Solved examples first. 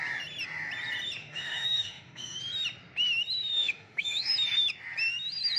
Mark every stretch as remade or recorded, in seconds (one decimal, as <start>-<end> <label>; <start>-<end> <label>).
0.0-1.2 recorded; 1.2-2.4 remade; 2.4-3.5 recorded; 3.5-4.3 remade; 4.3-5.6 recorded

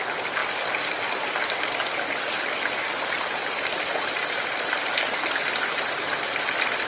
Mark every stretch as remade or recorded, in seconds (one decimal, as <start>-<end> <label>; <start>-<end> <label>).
0.0-6.9 recorded

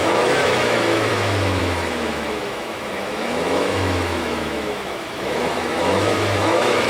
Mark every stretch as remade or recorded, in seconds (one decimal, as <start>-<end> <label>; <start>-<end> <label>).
0.0-6.9 remade